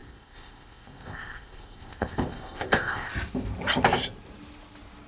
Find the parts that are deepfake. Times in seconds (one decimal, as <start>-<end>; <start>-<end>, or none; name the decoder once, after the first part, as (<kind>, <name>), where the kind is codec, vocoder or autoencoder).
0.0-3.1 (codec, ZipCodec)